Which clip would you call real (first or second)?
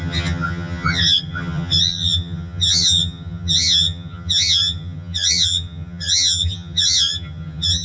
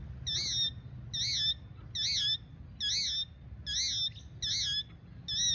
second